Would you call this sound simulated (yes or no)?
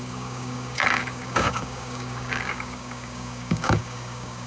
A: yes